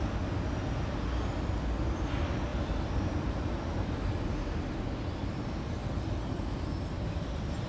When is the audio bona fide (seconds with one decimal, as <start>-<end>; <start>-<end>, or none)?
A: 0.0-2.5; 4.8-7.7